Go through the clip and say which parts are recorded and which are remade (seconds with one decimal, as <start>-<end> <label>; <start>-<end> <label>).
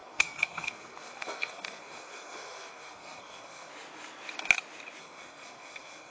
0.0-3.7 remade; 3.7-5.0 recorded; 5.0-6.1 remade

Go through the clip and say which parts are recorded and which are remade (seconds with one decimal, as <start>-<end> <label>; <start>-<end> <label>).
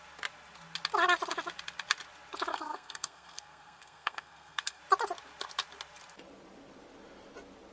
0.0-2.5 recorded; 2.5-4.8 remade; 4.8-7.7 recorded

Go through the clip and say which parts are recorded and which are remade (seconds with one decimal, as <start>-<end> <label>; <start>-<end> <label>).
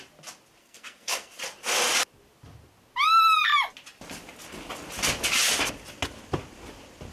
0.0-0.6 recorded; 0.6-1.4 remade; 1.4-7.1 recorded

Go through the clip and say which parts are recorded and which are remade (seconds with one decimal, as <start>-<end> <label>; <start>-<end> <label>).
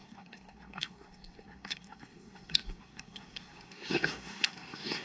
0.0-5.0 remade